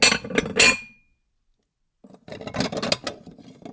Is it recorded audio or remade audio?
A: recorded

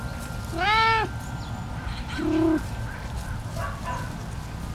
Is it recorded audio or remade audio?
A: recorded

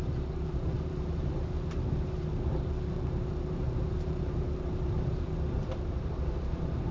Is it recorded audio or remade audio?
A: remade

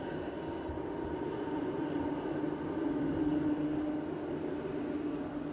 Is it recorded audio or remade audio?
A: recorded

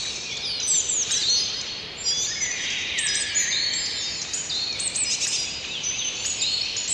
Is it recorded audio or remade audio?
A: recorded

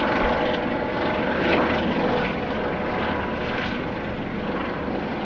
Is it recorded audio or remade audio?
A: recorded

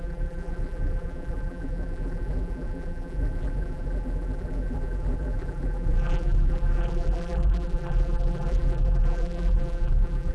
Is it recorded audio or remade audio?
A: remade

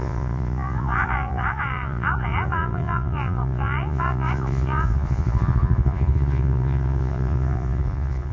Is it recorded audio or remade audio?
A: remade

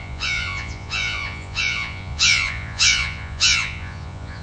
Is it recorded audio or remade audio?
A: remade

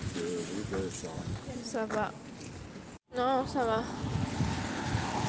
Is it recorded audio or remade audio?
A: recorded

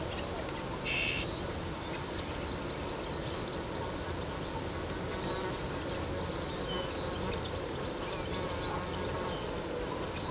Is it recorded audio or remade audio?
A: recorded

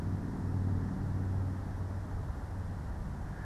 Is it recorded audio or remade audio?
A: recorded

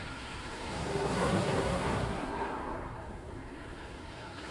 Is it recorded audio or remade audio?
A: remade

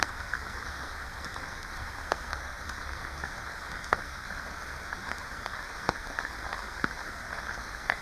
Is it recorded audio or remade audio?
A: remade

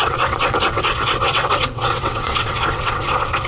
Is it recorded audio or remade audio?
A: remade